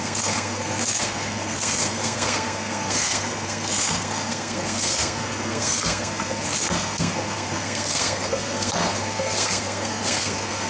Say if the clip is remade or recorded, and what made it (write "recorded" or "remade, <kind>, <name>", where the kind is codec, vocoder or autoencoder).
remade, codec, SNAC